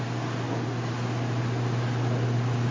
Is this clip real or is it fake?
real